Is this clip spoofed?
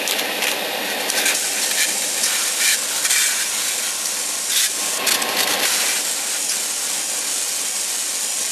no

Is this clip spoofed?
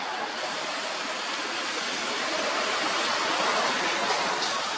no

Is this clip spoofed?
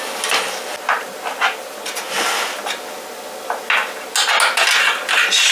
no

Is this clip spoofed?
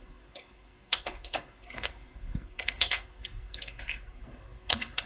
yes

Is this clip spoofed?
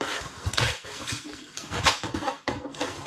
yes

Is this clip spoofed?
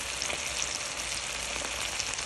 no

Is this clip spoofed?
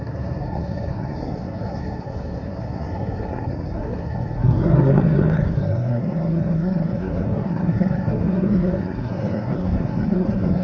yes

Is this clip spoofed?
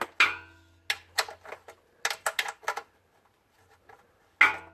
no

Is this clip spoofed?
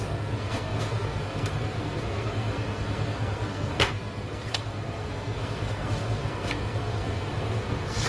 yes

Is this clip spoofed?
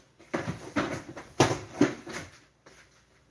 no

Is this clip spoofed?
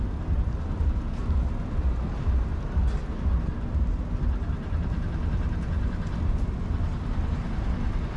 no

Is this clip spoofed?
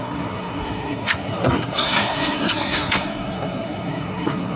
yes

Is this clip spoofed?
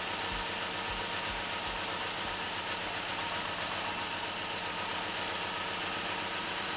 no